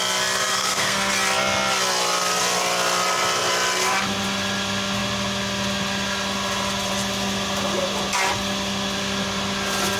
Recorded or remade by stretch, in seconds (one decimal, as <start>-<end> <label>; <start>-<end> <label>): 0.0-0.4 recorded; 0.4-1.1 remade; 1.1-10.0 recorded